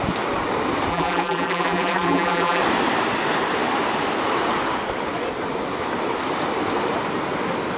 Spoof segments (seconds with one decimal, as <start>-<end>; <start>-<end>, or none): 0.9-2.6